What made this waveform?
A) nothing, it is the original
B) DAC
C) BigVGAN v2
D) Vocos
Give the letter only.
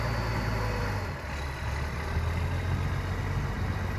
A